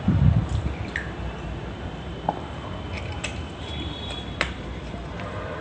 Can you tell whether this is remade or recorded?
remade